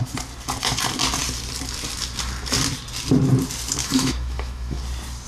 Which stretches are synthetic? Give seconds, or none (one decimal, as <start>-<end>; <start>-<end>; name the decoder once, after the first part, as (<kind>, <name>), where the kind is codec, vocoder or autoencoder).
3.8-4.8 (autoencoder, DAC-VAE)